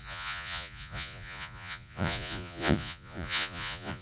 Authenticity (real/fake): fake